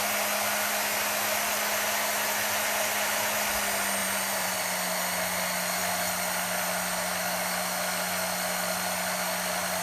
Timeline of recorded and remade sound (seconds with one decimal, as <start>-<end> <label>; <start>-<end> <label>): 0.0-4.0 recorded; 4.0-4.5 remade; 4.5-9.8 recorded